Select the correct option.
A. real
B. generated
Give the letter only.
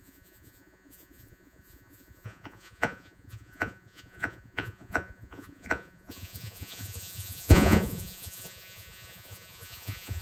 B